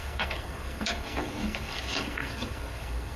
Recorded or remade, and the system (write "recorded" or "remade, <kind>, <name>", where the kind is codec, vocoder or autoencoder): remade, codec, SNAC